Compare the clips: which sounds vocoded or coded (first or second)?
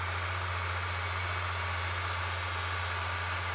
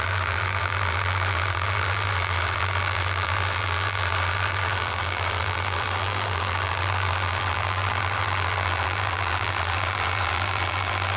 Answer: second